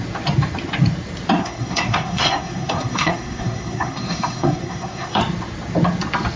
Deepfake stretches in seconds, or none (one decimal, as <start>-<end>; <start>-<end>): 1.4-5.2